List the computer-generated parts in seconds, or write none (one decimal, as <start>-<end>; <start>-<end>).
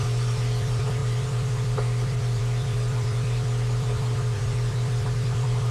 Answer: 0.0-5.7